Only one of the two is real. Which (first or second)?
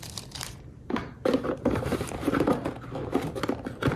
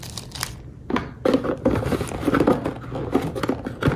second